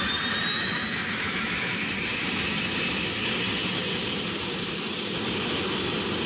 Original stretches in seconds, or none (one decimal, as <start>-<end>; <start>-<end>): 0.0-0.5; 1.9-6.3